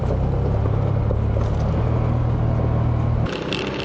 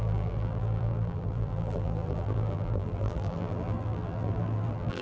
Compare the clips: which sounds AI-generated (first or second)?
second